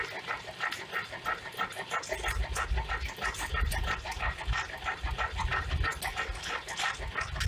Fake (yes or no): no